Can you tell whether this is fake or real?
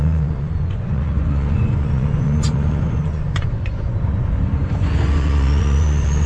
fake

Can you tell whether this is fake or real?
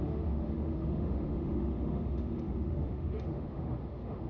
fake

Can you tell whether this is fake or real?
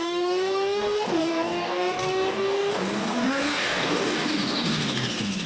fake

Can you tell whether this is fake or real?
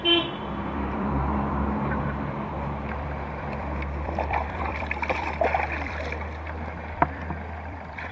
fake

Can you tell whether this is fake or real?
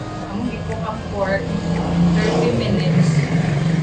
real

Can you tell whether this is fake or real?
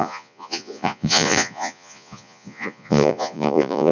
fake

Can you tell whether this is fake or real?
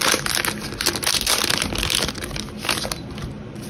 real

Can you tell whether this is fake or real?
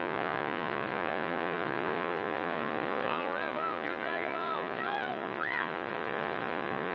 fake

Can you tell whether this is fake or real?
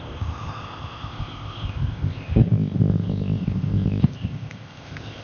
fake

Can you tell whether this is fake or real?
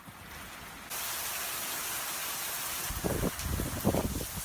real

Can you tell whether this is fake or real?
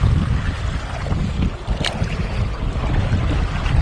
real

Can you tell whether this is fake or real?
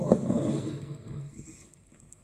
fake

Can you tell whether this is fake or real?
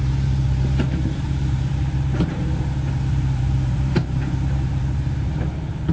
fake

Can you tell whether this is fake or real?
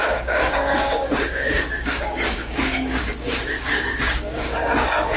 fake